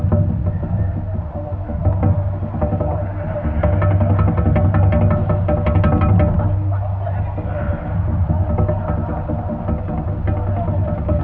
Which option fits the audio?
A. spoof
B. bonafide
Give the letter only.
B